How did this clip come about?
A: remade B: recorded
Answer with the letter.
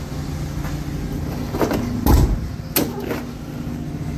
B